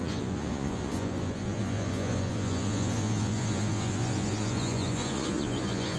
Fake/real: fake